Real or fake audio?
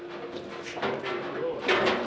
real